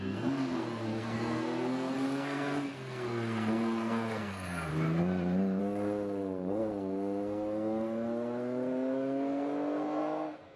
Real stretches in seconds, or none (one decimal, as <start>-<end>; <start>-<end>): 4.7-5.6